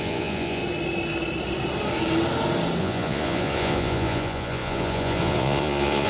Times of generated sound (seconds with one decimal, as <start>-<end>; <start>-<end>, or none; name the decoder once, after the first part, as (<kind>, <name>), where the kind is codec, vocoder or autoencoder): 0.0-0.6 (vocoder, Vocos); 2.8-6.1